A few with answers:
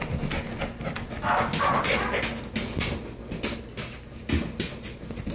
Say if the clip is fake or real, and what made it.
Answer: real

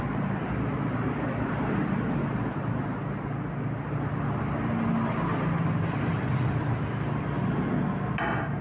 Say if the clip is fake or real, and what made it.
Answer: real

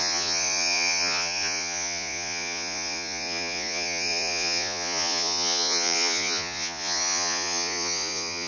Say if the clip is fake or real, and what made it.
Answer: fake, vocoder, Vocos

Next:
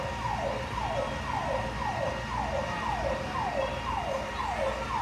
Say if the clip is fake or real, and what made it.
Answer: real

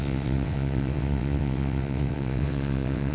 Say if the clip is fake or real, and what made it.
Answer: fake, vocoder, WaveNeXt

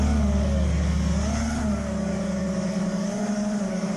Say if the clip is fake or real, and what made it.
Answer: fake, codec, DAC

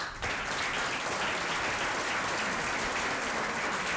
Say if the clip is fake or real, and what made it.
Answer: real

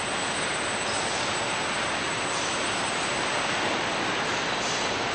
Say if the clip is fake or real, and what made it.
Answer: real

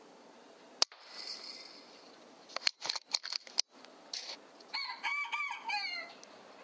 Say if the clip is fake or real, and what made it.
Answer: real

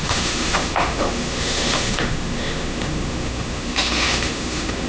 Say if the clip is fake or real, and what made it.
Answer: fake, autoencoder, DAC-VAE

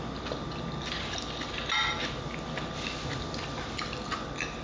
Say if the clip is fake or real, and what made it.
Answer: real